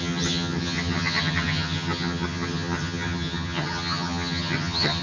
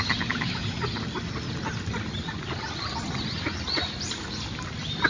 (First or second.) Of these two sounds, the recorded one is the second